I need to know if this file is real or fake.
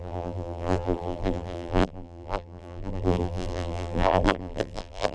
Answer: fake